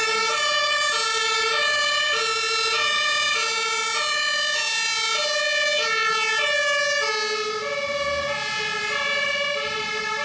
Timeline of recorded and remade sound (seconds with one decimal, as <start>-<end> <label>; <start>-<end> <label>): 0.0-10.2 recorded